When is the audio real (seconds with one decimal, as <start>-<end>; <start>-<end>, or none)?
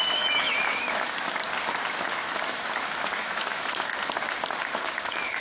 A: 1.4-1.9; 3.9-4.7